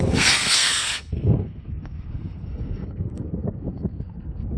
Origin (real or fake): fake